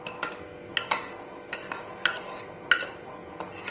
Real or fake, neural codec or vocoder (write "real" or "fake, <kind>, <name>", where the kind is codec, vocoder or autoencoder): real